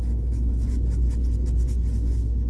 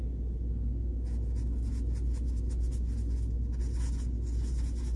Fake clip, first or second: first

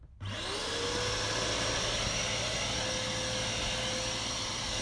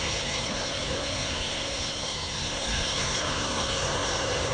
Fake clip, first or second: second